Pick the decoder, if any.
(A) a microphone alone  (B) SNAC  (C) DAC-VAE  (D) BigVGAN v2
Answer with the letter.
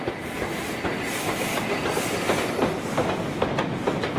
A